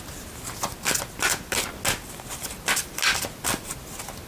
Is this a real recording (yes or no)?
yes